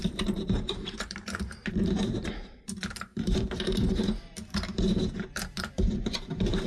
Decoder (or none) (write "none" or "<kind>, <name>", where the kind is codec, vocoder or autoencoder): vocoder, BigVGAN v2